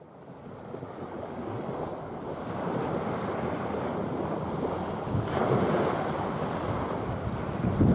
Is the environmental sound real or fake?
real